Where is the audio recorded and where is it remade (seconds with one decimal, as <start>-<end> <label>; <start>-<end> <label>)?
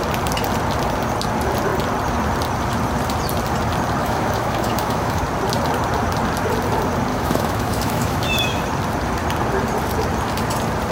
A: 0.0-4.0 recorded; 4.0-5.2 remade; 5.2-7.1 recorded; 7.1-8.6 remade; 8.6-10.9 recorded